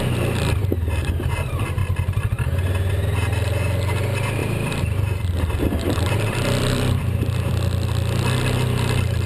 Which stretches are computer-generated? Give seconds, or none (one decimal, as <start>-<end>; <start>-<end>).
4.4-7.5